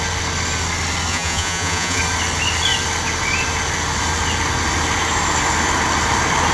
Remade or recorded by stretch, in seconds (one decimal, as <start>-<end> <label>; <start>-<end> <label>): 0.0-1.1 recorded; 1.1-2.0 remade; 2.0-6.5 recorded